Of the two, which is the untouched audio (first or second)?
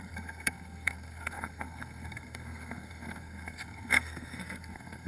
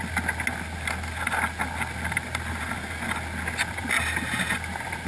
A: second